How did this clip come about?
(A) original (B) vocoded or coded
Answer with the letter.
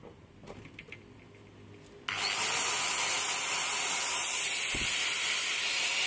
A